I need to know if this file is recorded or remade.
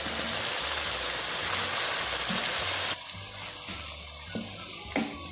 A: recorded